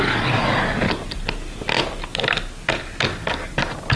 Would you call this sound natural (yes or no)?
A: yes